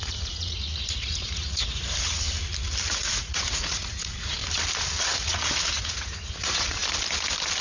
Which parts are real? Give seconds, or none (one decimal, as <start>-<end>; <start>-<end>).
1.8-2.9; 4.4-5.0; 6.8-7.6